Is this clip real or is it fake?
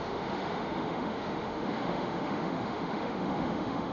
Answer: fake